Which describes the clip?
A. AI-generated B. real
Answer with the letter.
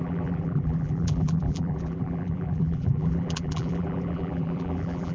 A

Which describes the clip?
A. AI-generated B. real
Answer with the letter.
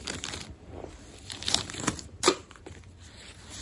A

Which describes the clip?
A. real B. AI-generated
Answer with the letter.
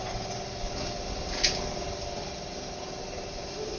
A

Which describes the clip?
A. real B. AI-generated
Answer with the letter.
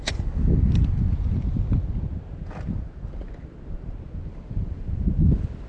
A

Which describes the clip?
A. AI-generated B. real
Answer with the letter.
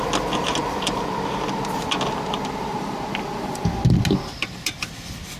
B